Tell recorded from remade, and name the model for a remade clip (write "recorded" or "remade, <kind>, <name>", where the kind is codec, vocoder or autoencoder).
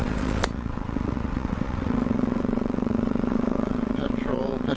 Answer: remade, vocoder, WaveNeXt